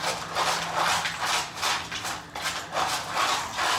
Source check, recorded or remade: recorded